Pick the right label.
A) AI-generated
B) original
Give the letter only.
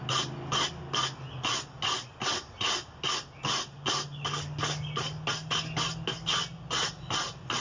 B